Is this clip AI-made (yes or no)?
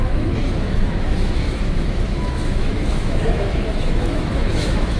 yes